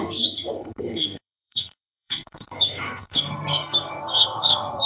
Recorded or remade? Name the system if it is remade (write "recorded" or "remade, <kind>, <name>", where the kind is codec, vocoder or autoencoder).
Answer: remade, codec, SNAC